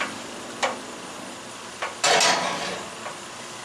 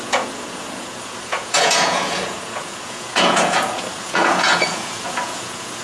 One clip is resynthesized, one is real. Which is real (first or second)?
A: first